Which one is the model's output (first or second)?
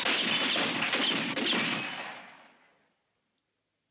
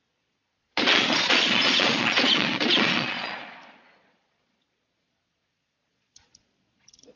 second